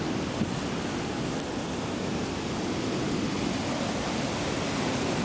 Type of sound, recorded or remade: recorded